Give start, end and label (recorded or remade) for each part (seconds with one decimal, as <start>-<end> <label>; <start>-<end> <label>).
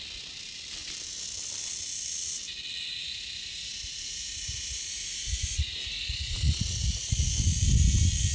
0.0-2.9 recorded; 2.9-7.2 remade; 7.2-8.3 recorded